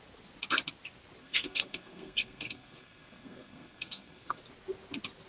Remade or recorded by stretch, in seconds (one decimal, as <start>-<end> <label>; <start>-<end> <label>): 0.0-1.2 recorded; 1.2-4.4 remade; 4.4-5.3 recorded